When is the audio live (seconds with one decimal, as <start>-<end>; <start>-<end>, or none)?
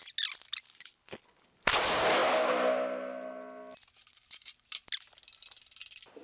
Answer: 0.0-0.7; 1.5-6.2